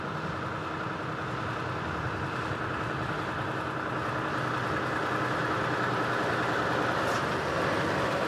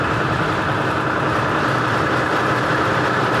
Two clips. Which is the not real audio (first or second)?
second